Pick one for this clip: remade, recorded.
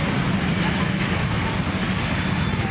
recorded